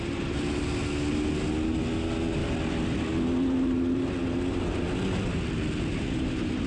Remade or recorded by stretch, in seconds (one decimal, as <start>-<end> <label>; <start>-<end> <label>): 0.0-6.7 recorded